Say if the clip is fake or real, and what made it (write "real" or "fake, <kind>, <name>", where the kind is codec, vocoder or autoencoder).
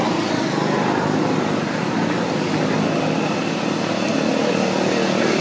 real